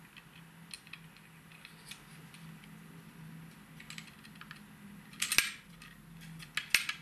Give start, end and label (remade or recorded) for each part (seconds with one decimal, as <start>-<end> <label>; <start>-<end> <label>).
0.0-7.0 recorded